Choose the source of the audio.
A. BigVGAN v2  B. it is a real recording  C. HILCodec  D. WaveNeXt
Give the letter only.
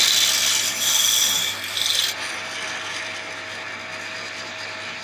B